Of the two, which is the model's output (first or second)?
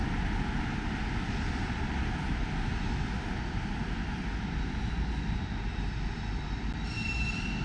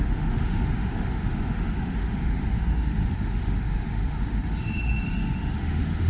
second